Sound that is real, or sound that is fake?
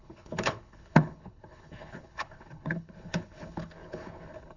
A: fake